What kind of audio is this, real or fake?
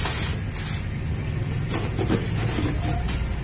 real